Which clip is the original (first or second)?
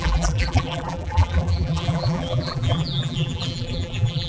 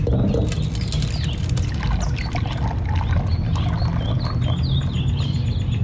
second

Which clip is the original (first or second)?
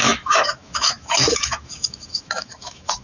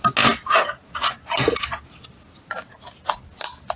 second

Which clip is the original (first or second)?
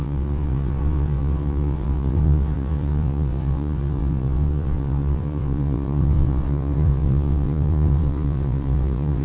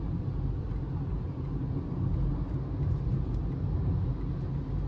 second